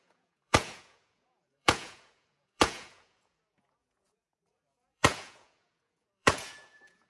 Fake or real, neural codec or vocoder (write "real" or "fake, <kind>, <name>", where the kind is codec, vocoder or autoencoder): fake, vocoder, Vocos